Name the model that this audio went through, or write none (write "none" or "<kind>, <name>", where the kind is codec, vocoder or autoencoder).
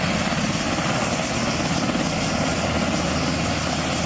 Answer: none